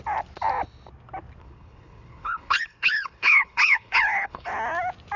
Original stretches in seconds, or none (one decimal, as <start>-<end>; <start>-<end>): 0.0-1.4; 4.5-5.2